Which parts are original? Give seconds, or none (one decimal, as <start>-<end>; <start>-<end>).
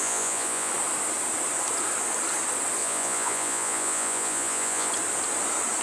0.7-2.8; 4.9-5.8